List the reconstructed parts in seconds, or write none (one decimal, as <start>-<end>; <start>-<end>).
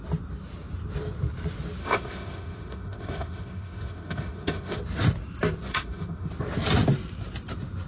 1.8-4.8; 5.7-6.3